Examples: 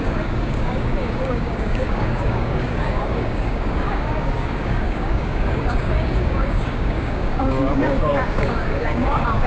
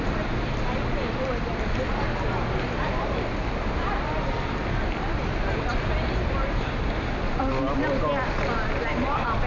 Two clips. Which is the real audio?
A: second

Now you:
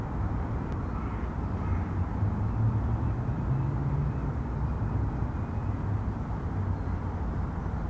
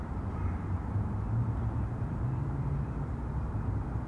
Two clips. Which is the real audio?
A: first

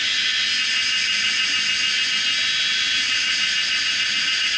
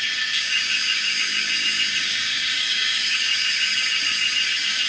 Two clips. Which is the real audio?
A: first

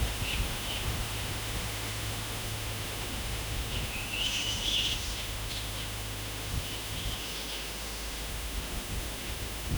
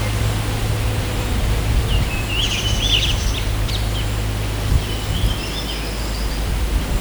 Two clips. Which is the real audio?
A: second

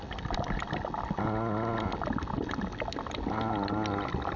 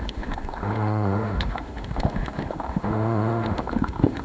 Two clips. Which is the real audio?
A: first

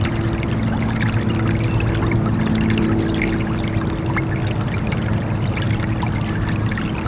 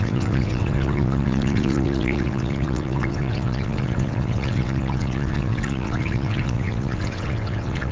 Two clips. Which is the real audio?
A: first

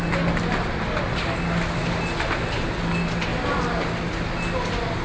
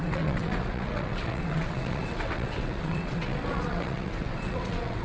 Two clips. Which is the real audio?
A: first